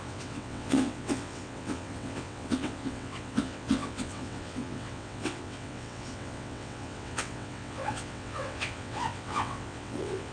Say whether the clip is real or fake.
fake